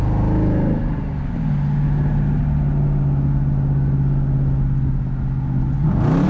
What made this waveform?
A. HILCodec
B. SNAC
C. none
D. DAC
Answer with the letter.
C